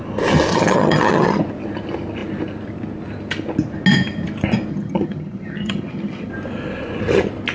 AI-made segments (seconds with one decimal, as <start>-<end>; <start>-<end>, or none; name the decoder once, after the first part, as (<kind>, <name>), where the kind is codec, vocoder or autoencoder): 0.5-1.4 (vocoder, HiFi-GAN); 4.7-6.3